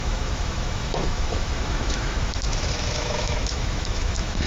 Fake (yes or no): yes